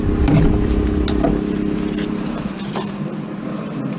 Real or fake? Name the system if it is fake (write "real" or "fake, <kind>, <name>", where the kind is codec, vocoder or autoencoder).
real